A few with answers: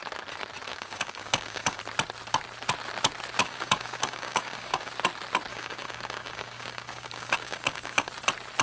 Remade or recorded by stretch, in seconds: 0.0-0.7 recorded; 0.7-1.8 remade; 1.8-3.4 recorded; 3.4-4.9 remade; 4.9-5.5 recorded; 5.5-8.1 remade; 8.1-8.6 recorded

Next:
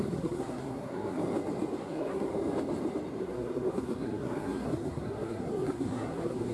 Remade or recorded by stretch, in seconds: 0.0-1.2 remade; 1.2-1.8 recorded; 1.8-2.3 remade; 2.3-3.2 recorded; 3.2-6.5 remade

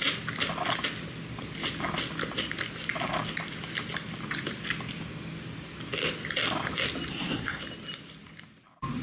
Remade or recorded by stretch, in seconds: 0.0-7.1 recorded; 7.1-7.6 remade; 7.6-9.0 recorded

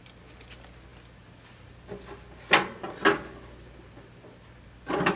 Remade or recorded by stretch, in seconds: 0.0-5.2 recorded

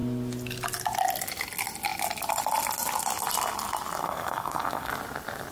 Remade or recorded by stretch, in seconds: 0.0-4.0 recorded; 4.0-4.9 remade; 4.9-5.5 recorded

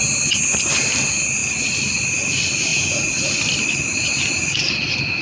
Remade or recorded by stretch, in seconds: 0.0-5.2 recorded

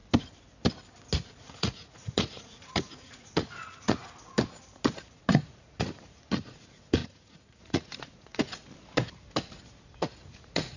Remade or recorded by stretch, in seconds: 0.0-1.3 recorded; 1.3-4.0 remade; 4.0-4.9 recorded; 4.9-8.6 remade; 8.6-9.8 recorded; 9.8-10.8 remade

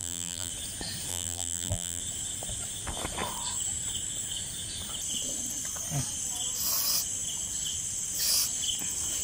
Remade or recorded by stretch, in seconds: 0.0-0.5 remade; 0.5-1.1 recorded; 1.1-2.0 remade; 2.0-9.2 recorded